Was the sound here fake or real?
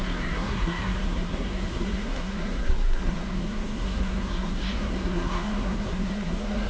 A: fake